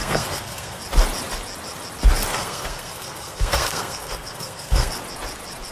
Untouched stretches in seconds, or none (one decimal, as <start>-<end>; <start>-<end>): 0.8-2.3; 4.9-5.7

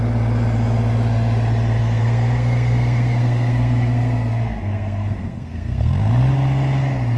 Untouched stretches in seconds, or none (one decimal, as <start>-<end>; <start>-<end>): 0.0-1.8; 6.1-7.2

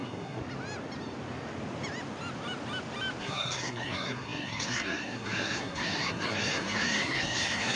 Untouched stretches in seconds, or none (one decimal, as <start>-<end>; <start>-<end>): 0.4-3.2

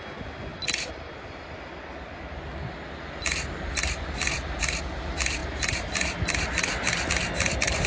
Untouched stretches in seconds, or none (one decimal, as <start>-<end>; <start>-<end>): 0.0-7.9

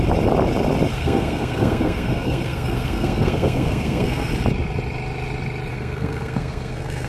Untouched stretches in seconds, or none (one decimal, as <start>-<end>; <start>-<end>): 0.0-0.9; 4.3-5.7

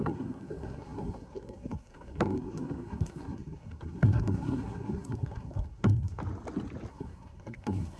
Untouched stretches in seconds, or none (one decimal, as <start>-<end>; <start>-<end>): 6.2-6.9